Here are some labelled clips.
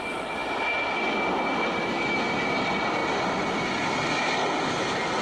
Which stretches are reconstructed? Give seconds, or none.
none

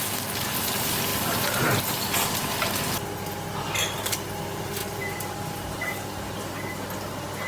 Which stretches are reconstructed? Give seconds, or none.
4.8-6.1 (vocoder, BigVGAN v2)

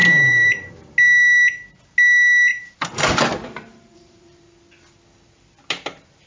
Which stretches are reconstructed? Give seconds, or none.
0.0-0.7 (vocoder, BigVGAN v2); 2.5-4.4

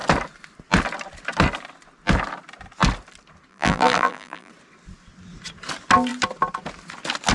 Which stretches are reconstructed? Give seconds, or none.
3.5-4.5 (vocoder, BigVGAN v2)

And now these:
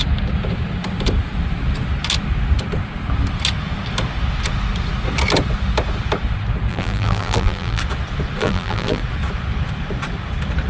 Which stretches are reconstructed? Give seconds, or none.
6.7-7.8 (vocoder, BigVGAN v2); 8.4-9.0